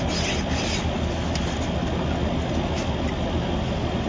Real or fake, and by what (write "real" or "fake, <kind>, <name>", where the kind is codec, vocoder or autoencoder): real